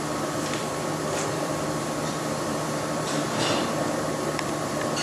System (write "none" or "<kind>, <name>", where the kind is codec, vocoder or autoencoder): vocoder, BigVGAN v2